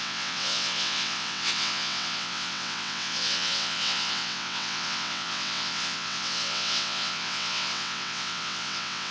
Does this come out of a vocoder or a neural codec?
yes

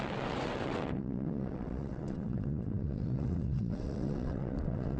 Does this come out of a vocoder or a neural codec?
yes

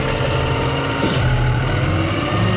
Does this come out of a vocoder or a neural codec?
no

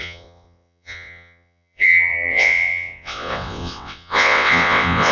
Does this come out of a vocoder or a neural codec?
yes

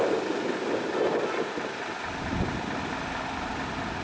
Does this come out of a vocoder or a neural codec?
no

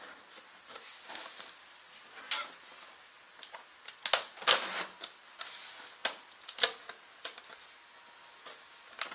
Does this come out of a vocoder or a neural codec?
no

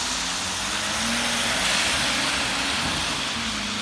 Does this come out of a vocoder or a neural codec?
no